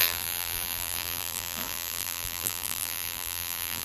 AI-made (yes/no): yes